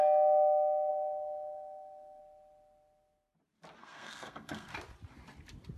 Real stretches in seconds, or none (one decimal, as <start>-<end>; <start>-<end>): 0.0-0.9; 2.2-3.8; 4.7-5.8